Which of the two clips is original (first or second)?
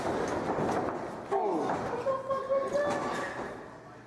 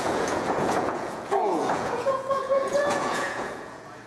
first